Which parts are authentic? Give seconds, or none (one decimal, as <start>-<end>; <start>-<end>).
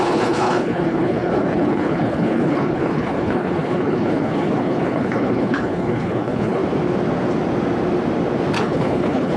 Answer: 6.6-8.6